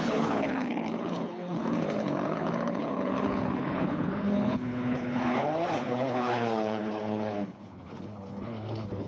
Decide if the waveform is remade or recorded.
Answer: remade